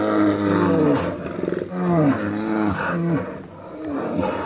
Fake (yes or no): no